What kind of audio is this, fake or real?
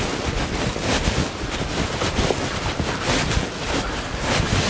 real